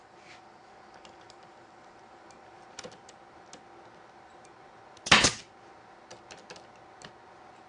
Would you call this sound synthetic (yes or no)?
no